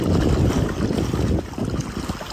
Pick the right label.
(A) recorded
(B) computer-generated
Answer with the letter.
A